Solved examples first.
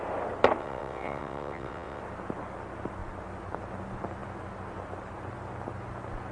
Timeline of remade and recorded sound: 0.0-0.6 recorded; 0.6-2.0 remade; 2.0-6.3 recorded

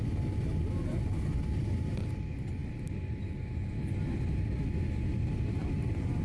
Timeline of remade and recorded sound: 0.0-6.2 recorded

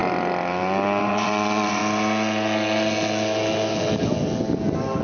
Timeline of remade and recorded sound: 0.0-1.0 recorded; 1.0-1.8 remade; 1.8-5.0 recorded

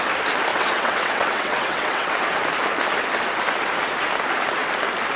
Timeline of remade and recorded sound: 0.0-0.5 recorded; 0.5-2.1 remade; 2.1-5.2 recorded